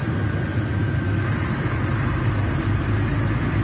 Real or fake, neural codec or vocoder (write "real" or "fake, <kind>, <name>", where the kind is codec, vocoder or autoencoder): real